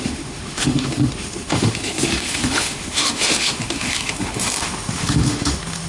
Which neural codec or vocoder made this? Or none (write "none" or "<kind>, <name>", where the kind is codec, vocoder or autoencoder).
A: autoencoder, DAC-VAE